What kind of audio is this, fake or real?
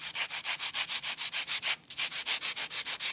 real